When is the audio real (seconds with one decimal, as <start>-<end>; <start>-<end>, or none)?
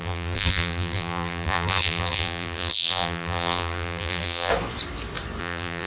4.5-5.4